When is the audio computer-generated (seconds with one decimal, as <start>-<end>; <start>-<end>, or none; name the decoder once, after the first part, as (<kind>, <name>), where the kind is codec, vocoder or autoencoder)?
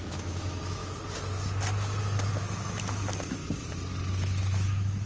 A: 0.0-0.8 (autoencoder, DAC-VAE); 2.3-3.4; 4.1-5.1